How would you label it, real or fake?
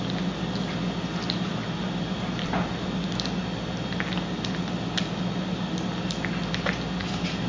real